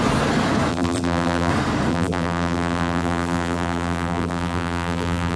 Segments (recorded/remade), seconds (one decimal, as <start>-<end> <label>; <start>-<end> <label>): 0.0-0.7 recorded; 0.7-1.5 remade; 1.5-1.9 recorded; 1.9-5.4 remade